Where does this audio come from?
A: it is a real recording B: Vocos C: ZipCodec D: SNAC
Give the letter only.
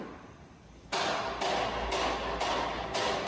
A